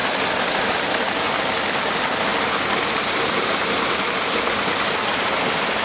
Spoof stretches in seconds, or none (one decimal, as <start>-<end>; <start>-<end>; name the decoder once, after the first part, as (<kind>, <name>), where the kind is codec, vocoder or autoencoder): 2.3-5.8 (vocoder, BigVGAN v2)